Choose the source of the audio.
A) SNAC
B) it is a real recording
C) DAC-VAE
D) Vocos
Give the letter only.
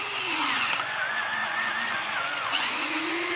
D